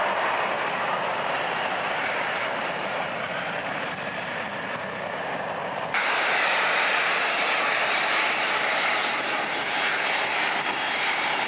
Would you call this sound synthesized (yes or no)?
yes